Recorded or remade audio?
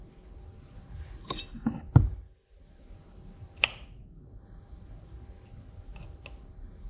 recorded